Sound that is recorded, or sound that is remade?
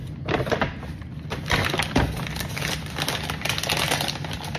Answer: recorded